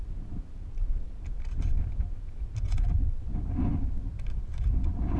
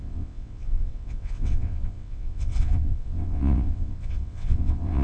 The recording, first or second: first